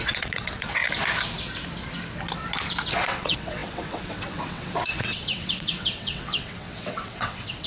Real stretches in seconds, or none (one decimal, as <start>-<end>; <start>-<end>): 0.8-2.9